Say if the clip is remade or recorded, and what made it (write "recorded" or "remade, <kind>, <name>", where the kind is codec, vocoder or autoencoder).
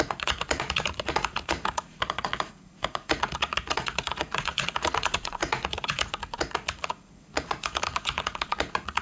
remade, vocoder, Vocos